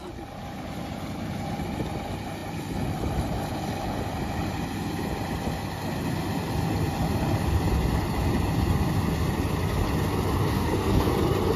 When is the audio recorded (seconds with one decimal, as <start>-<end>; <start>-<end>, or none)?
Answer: 0.0-10.5; 11.1-11.6